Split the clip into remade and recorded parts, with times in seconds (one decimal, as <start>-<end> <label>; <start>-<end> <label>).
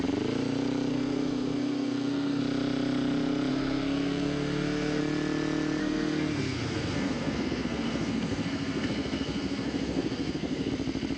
0.0-0.9 recorded; 0.9-2.4 remade; 2.4-3.5 recorded; 3.5-5.0 remade; 5.0-5.8 recorded; 5.8-10.7 remade; 10.7-11.2 recorded